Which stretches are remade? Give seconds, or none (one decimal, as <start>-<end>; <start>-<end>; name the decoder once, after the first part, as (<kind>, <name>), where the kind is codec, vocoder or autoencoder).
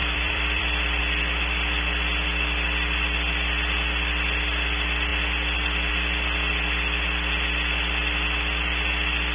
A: 0.0-1.0 (vocoder, BigVGAN v2)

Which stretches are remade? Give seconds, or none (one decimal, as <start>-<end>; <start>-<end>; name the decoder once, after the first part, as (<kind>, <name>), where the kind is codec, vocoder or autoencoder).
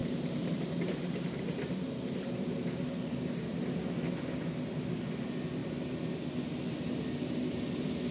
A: 0.0-2.8 (vocoder, BigVGAN v2)